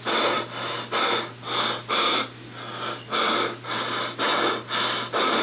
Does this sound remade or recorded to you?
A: recorded